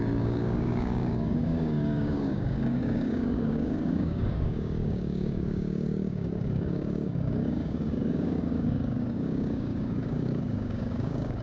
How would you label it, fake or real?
fake